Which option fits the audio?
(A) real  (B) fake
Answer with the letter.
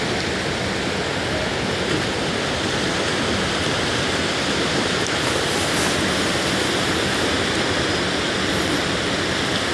A